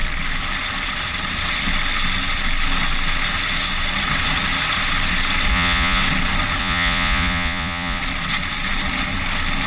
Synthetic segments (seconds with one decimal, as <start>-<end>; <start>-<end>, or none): 5.5-6.0; 6.6-8.0